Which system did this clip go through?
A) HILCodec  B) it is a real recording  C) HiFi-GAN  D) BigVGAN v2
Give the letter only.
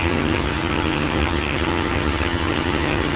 C